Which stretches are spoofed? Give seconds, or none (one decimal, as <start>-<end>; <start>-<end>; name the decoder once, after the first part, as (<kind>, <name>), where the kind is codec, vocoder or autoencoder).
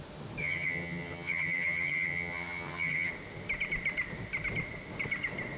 0.4-3.1 (vocoder, HiFi-GAN)